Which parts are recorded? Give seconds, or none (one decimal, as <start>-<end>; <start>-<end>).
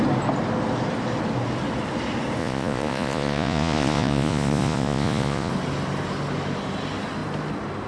0.0-2.4; 5.5-7.9